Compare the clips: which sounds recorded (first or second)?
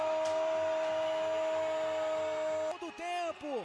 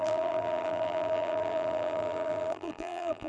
first